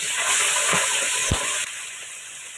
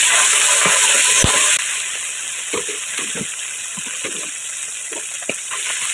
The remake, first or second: first